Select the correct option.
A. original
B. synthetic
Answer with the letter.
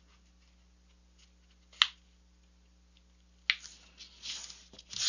A